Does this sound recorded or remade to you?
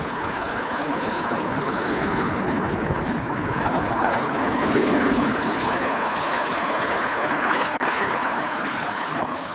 remade